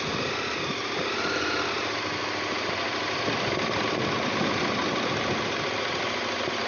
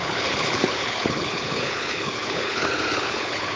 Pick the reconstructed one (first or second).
second